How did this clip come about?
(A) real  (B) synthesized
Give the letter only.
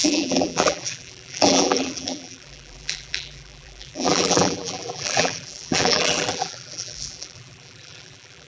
B